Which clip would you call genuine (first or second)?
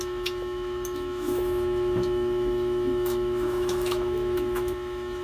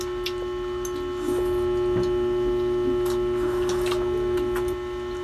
second